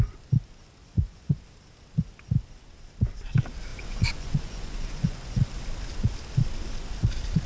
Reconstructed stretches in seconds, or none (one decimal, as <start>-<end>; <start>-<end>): 0.8-1.4; 3.7-5.5